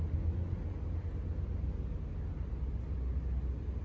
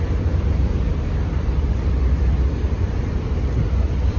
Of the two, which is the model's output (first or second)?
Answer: second